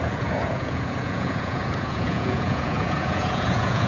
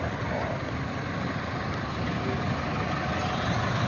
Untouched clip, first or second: second